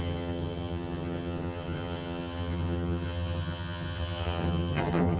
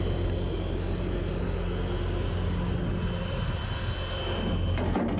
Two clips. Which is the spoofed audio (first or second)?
first